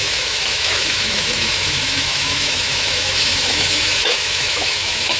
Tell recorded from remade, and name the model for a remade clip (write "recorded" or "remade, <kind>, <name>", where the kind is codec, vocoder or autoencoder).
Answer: remade, autoencoder, DAC-VAE